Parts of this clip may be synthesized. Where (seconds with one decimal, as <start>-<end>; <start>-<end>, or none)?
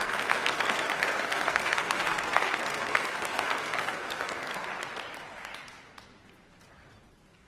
0.0-4.7; 7.1-7.5